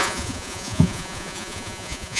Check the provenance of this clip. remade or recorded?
remade